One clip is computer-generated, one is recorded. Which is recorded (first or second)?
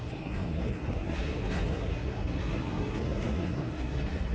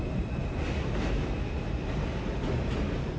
second